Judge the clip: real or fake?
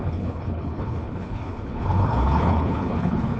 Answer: fake